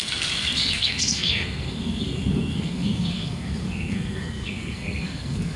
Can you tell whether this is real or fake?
fake